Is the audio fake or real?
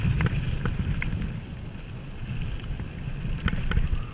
real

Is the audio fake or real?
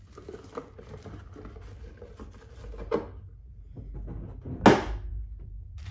real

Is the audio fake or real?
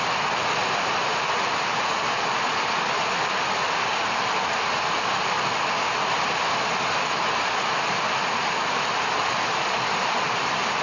real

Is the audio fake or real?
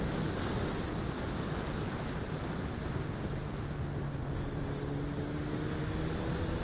real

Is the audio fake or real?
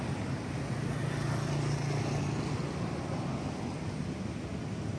real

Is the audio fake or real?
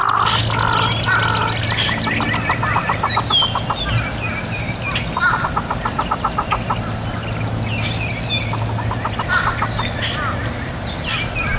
real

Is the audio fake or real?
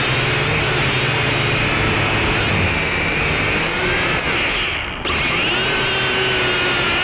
real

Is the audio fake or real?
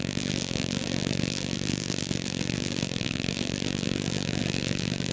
fake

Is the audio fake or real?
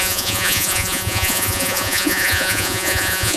fake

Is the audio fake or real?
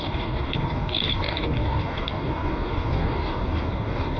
fake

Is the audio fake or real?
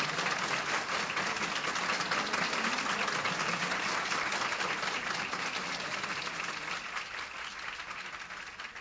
real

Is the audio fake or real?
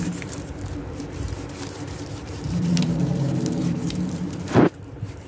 fake